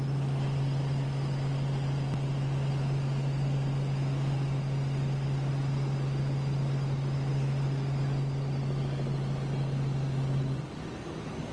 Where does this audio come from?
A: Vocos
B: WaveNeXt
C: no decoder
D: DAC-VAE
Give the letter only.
C